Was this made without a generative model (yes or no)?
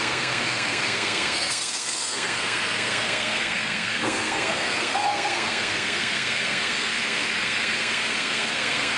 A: no